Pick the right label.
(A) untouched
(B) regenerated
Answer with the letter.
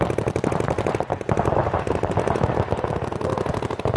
A